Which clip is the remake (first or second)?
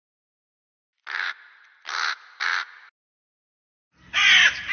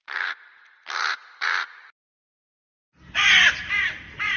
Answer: second